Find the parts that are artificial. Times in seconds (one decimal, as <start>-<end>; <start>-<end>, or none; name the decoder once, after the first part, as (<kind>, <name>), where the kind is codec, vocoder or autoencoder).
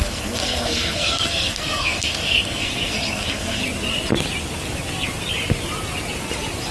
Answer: 0.0-3.6 (codec, SNAC)